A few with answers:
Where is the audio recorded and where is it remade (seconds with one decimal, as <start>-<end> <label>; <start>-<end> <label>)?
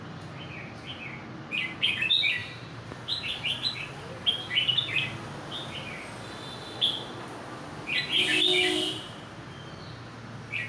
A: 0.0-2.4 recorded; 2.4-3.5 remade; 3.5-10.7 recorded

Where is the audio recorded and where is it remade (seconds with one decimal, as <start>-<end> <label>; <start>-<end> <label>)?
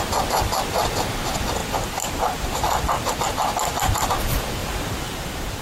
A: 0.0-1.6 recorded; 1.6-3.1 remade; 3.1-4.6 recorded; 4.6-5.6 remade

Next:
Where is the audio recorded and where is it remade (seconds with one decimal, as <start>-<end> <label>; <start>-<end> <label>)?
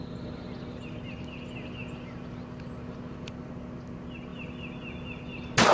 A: 0.0-5.7 recorded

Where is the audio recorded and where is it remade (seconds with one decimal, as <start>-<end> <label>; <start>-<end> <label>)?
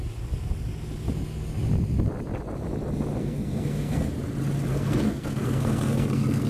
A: 0.0-3.2 recorded; 3.2-4.1 remade; 4.1-4.7 recorded; 4.7-6.5 remade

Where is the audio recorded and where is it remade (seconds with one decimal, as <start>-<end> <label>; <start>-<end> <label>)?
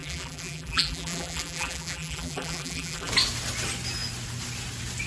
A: 0.0-3.1 remade; 3.1-5.1 recorded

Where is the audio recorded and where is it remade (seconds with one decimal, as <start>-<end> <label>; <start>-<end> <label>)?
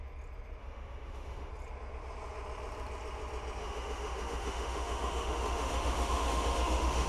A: 0.0-0.6 recorded; 0.6-1.5 remade; 1.5-3.6 recorded; 3.6-7.1 remade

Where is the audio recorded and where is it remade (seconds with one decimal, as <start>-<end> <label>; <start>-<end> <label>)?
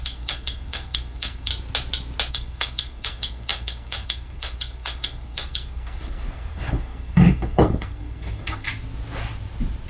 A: 0.0-1.5 remade; 1.5-2.3 recorded; 2.3-8.7 remade; 8.7-9.9 recorded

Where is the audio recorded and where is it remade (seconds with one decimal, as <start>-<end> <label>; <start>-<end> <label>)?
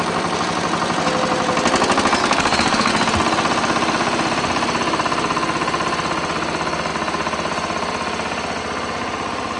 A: 0.0-2.2 recorded; 2.2-2.9 remade; 2.9-9.6 recorded